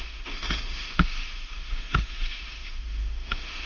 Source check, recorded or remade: remade